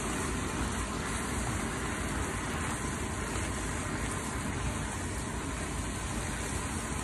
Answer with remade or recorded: recorded